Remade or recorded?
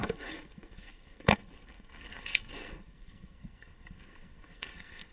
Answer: remade